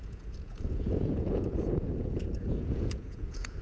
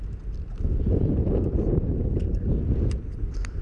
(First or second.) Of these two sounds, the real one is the second